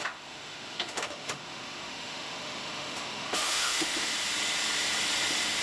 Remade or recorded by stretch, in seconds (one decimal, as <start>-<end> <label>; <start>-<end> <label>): 0.0-4.1 remade; 4.1-5.6 recorded